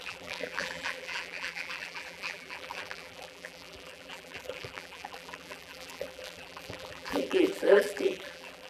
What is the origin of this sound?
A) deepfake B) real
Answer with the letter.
A